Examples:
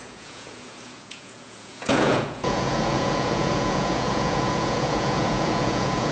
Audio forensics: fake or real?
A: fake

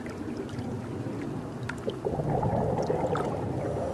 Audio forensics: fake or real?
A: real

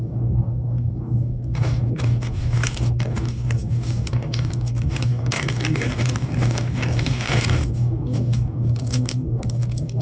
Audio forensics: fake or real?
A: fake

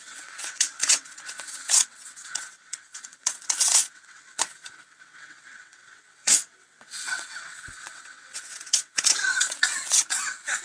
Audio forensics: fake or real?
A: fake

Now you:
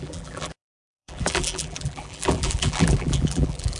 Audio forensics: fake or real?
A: fake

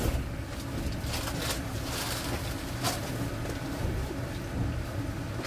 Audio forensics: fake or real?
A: real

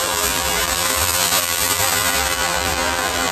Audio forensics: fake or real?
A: fake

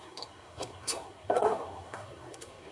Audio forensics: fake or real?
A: fake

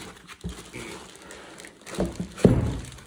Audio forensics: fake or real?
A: real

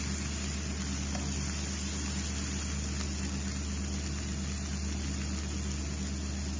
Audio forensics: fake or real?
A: real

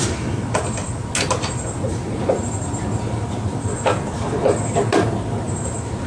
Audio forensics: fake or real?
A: real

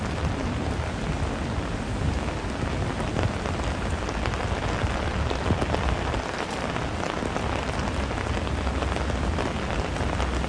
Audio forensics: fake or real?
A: real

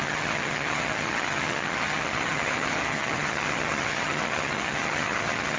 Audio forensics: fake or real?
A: fake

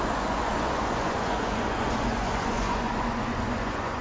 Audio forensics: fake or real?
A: fake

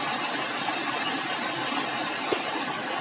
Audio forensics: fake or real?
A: real